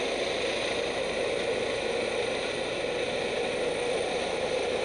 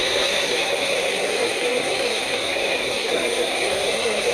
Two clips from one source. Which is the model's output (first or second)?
second